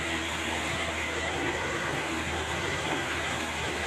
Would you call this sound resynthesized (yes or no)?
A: yes